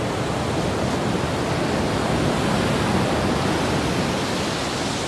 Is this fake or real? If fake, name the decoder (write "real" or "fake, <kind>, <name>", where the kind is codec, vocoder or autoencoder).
real